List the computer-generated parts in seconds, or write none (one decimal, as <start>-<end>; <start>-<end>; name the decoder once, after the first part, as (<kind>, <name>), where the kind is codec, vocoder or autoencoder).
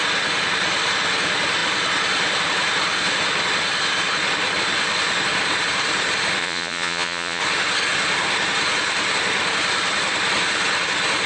6.4-7.4 (vocoder, Vocos)